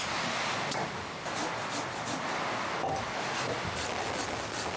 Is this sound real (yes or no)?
yes